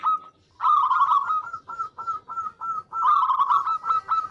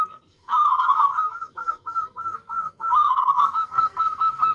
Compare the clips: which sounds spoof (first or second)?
second